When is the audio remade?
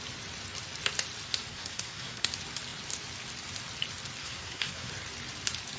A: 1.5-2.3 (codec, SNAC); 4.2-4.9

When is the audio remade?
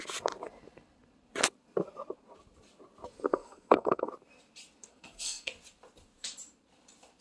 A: 3.3-4.1 (codec, SNAC); 4.9-5.5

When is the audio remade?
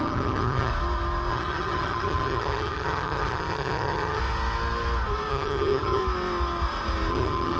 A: 0.0-0.7 (vocoder, HiFi-GAN); 1.3-4.2; 5.3-6.0; 7.1-7.6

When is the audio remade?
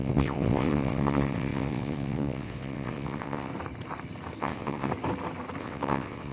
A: 0.0-3.5 (vocoder, WaveNeXt); 4.4-4.9; 5.6-6.3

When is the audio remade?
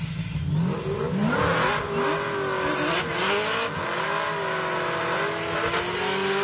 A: none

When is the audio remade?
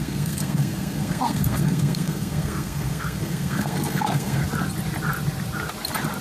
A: 0.0-4.4 (codec, SNAC)